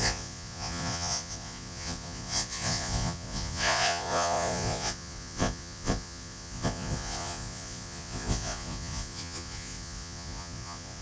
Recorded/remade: remade